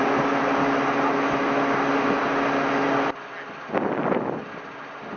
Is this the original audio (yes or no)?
yes